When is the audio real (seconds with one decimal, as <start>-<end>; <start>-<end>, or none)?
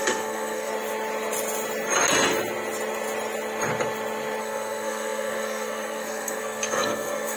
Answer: 0.7-4.4